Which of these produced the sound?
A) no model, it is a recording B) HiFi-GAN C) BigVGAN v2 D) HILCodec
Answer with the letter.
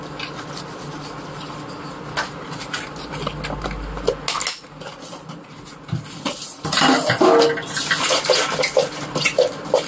A